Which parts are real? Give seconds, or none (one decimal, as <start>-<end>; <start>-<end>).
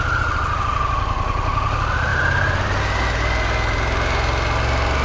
0.0-2.1; 2.8-5.0